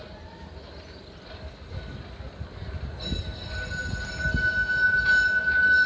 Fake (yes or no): no